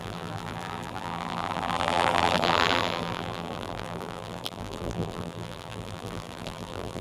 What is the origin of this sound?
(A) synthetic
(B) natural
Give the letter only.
A